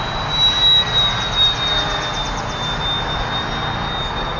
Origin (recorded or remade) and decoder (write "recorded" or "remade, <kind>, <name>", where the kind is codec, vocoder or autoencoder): recorded